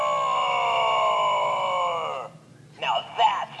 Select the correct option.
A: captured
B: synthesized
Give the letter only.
A